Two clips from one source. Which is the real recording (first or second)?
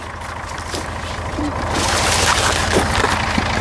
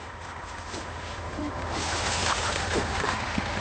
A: first